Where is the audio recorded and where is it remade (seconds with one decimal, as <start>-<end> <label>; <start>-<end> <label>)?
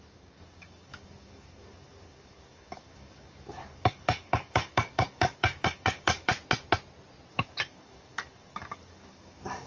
0.0-6.3 remade; 6.3-7.3 recorded; 7.3-9.7 remade